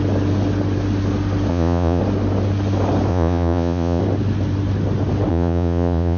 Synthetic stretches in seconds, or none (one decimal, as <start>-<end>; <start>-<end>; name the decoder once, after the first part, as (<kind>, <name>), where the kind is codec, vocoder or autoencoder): 1.5-2.0 (vocoder, Vocos); 3.1-4.0; 5.3-6.2